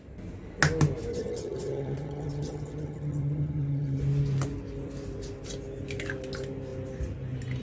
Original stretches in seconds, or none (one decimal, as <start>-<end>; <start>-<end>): 0.0-1.1; 4.0-7.6